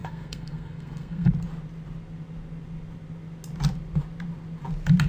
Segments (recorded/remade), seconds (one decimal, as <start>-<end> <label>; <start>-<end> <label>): 0.0-1.3 remade; 1.3-5.1 recorded